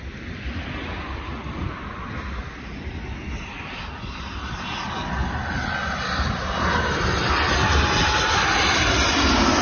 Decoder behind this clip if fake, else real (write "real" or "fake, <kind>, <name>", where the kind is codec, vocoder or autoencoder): real